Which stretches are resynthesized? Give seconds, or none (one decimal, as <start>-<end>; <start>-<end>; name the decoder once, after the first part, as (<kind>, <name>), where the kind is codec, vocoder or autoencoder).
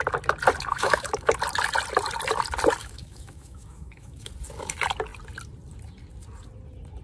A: 0.7-1.3 (autoencoder, DAC-VAE); 2.8-4.3